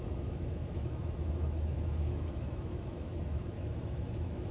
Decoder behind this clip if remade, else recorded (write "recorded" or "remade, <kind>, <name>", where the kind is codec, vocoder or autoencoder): remade, autoencoder, DAC-VAE